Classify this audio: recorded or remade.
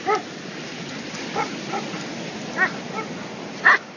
recorded